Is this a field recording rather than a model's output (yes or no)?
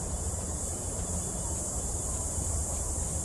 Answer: no